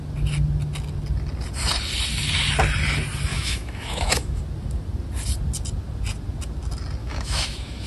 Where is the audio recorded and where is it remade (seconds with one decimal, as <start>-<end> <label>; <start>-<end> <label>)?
0.0-3.3 recorded; 3.3-4.4 remade; 4.4-7.0 recorded; 7.0-7.9 remade